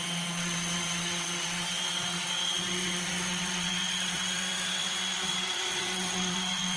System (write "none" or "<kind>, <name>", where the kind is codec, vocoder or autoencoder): vocoder, WaveNeXt